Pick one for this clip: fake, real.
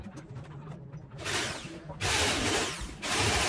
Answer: fake